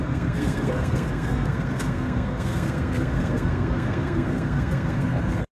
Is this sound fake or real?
fake